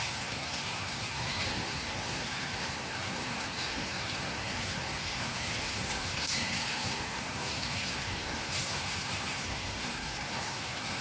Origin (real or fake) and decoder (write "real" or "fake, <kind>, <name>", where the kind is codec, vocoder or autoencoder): fake, codec, SNAC